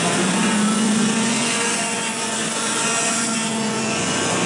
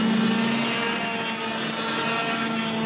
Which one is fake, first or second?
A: first